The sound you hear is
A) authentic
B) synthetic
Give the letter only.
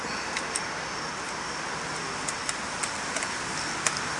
A